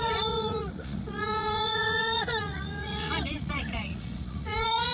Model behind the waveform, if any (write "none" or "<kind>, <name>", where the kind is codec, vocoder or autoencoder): vocoder, Vocos